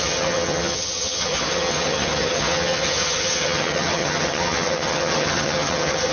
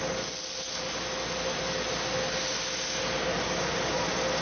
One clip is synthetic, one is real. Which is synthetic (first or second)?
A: first